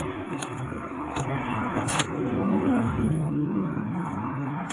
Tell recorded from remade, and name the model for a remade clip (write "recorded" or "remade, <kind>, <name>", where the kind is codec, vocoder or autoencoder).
remade, codec, SNAC